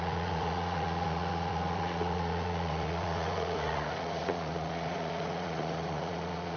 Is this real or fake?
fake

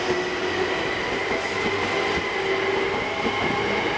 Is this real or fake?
real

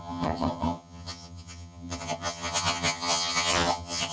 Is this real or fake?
fake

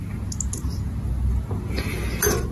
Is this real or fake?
real